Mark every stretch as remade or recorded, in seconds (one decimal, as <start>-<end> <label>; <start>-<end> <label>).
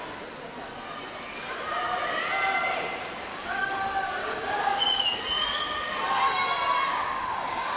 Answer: 0.0-3.3 recorded; 3.3-3.8 remade; 3.8-4.2 recorded; 4.2-5.2 remade; 5.2-6.9 recorded; 6.9-7.8 remade